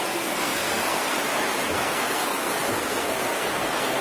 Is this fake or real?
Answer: fake